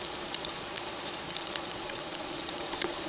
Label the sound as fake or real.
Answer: fake